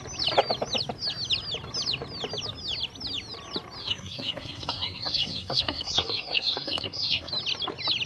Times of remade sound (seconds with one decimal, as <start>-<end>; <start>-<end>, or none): 3.8-7.3